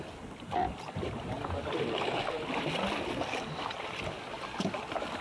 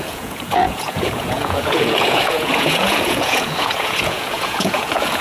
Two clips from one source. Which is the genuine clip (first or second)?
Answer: first